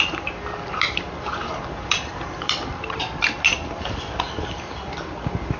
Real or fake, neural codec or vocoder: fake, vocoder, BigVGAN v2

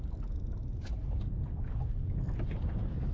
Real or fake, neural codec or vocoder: real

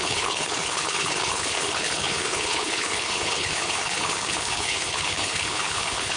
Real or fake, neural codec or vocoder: fake, codec, HILCodec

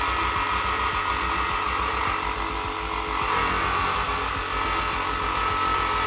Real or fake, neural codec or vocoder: real